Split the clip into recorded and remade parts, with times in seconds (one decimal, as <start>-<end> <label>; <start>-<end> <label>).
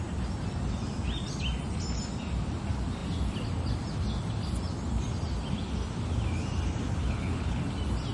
0.0-7.0 recorded; 7.0-7.6 remade; 7.6-8.1 recorded